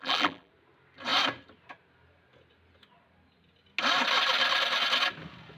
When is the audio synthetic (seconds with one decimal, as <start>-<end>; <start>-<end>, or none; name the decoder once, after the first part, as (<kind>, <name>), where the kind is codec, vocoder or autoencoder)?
0.0-0.5 (vocoder, BigVGAN v2)